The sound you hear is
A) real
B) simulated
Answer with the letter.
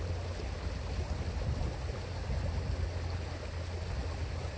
A